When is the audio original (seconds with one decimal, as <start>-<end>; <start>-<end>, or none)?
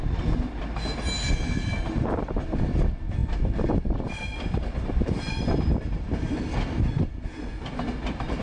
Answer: 0.0-3.2